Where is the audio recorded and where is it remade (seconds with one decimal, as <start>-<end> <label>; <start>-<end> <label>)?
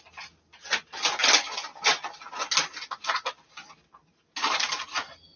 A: 0.0-5.4 recorded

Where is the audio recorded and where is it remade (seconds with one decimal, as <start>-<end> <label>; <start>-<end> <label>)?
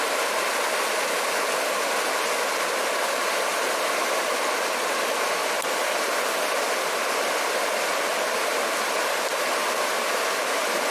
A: 0.0-10.9 recorded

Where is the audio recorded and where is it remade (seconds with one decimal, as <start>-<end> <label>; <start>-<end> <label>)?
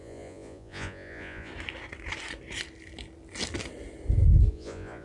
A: 0.0-1.5 remade; 1.5-4.5 recorded; 4.5-5.0 remade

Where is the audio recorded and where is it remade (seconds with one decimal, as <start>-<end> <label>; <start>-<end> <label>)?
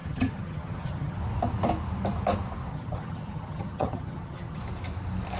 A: 0.0-1.2 remade; 1.2-2.7 recorded; 2.7-4.6 remade; 4.6-5.4 recorded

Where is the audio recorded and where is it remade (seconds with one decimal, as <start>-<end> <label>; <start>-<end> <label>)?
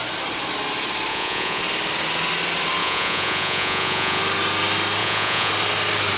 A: 0.0-1.1 recorded; 1.1-1.6 remade; 1.6-2.8 recorded; 2.8-4.2 remade; 4.2-5.0 recorded; 5.0-5.5 remade; 5.5-6.2 recorded